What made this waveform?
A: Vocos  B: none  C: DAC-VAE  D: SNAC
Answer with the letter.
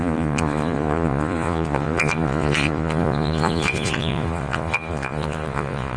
A